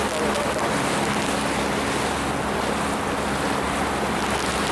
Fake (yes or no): no